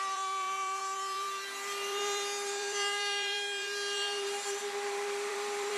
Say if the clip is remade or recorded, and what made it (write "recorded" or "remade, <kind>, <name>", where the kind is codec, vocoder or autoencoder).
remade, vocoder, BigVGAN v2